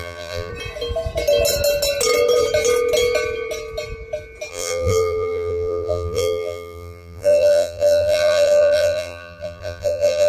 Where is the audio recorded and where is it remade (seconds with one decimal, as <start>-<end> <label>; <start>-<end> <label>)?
0.0-0.5 remade; 0.5-4.5 recorded; 4.5-10.3 remade